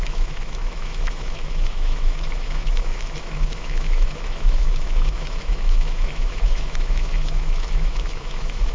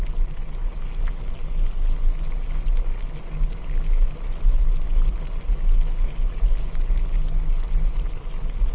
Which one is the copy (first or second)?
first